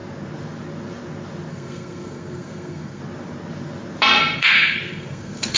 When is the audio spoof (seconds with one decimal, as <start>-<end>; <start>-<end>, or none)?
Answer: 1.5-3.0; 4.4-5.6